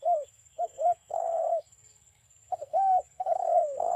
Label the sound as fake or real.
fake